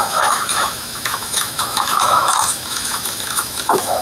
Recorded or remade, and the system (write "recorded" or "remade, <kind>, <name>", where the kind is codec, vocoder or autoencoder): remade, autoencoder, DAC-VAE